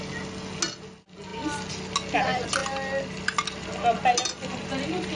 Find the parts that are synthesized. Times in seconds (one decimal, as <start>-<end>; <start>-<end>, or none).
none